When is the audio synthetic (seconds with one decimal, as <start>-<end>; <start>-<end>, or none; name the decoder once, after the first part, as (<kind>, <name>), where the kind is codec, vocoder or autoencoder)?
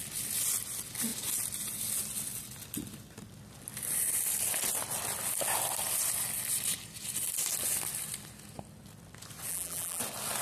9.5-10.0 (vocoder, BigVGAN v2)